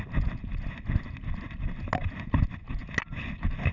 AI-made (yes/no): no